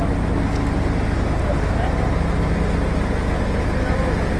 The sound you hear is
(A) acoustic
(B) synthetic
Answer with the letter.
A